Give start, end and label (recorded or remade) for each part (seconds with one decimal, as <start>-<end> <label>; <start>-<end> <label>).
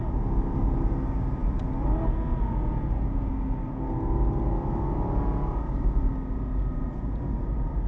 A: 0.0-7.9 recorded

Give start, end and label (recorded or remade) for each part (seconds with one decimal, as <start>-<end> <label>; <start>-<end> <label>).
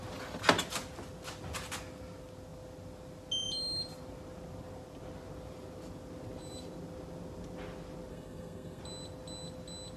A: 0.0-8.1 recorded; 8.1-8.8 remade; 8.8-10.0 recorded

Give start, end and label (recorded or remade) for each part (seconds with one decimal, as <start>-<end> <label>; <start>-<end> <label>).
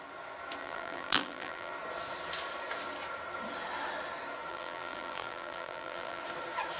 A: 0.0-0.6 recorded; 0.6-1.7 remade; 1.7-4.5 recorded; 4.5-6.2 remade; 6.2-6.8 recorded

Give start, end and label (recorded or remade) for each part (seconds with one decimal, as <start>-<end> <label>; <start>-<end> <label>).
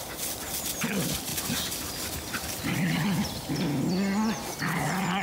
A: 0.0-5.2 recorded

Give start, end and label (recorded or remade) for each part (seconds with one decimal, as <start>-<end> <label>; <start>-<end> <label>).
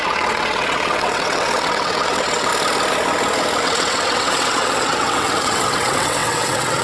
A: 0.0-2.5 remade; 2.5-3.6 recorded; 3.6-6.8 remade